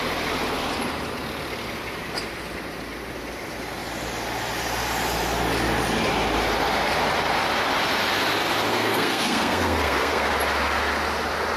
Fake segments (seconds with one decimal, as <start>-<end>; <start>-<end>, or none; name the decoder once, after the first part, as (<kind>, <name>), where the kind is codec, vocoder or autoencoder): 8.7-10.3 (codec, SNAC)